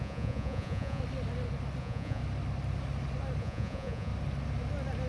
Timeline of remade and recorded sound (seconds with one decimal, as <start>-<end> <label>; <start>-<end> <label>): 0.0-1.0 remade; 1.0-1.8 recorded; 1.8-2.2 remade; 2.2-3.4 recorded; 3.4-4.1 remade; 4.1-5.1 recorded